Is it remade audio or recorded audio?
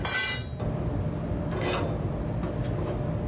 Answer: recorded